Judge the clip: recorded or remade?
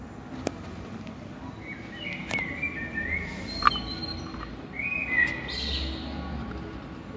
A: recorded